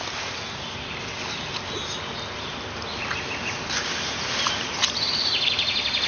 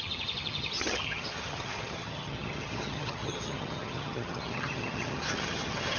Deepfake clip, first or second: second